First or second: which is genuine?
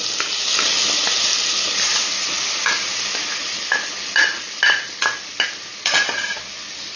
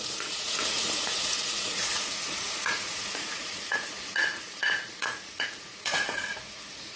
first